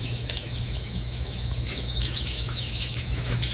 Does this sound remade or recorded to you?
remade